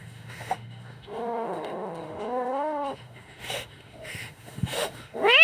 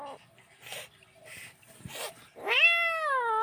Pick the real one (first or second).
second